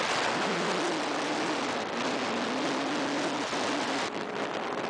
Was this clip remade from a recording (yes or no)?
no